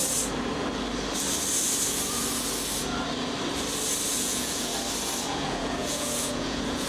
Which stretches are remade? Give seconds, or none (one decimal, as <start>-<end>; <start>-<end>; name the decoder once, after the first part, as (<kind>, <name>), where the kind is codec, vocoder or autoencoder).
4.1-4.7 (vocoder, Vocos); 5.3-6.9